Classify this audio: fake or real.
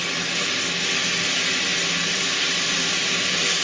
real